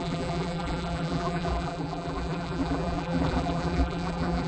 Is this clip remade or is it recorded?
remade